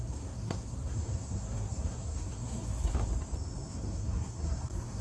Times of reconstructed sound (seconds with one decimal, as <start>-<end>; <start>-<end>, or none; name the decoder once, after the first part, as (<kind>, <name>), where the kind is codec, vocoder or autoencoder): 0.0-3.1 (codec, SNAC); 3.7-5.0

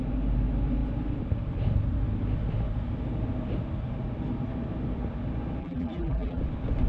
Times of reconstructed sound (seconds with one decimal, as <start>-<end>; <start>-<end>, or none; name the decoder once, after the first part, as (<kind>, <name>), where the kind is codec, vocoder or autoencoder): 5.6-6.4 (vocoder, BigVGAN v2)

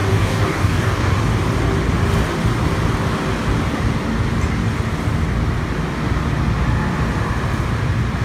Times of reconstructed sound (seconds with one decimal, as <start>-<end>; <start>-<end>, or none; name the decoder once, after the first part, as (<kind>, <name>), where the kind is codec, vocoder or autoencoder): 0.0-1.1 (codec, DAC)

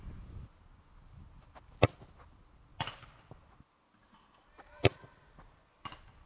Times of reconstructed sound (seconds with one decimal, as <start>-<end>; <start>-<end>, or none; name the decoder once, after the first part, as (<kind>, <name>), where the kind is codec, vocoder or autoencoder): 4.4-5.2 (vocoder, BigVGAN v2)

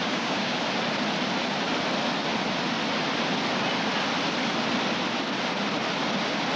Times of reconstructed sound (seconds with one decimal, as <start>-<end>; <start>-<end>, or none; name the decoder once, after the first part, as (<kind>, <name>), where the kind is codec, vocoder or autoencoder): 0.0-0.6 (codec, DAC)

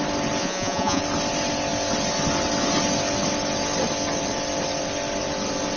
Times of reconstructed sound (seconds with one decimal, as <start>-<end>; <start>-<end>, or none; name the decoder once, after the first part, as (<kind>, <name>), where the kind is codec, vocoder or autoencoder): 0.4-1.0 (vocoder, Vocos)

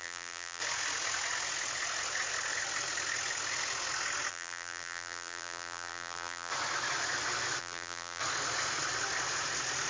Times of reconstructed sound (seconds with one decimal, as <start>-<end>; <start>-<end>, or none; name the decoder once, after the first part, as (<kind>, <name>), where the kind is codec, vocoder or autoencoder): 0.0-0.6 (vocoder, BigVGAN v2); 4.3-6.5; 7.6-8.2